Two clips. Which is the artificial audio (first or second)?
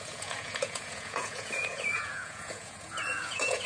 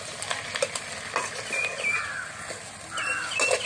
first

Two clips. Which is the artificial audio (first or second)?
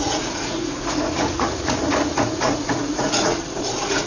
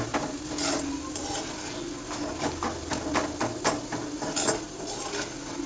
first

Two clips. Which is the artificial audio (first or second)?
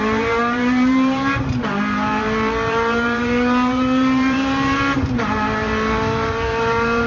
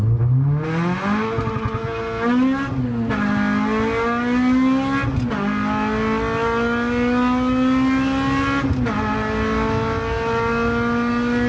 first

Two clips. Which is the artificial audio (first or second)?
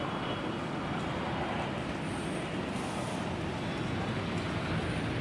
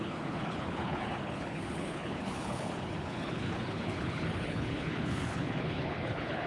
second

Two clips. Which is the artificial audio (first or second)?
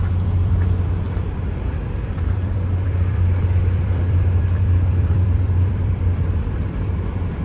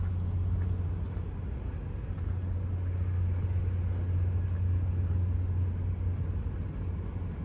first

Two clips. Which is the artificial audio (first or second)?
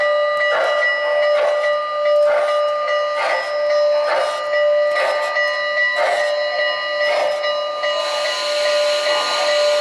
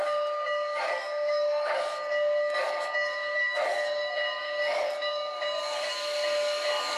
second